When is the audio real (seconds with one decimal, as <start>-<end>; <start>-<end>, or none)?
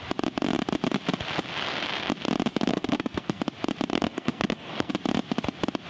0.0-2.5; 3.4-3.9; 4.9-5.9